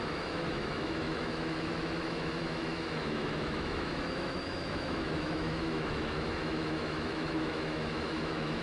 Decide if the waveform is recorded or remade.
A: remade